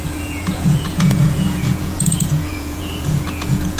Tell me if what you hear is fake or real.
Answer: fake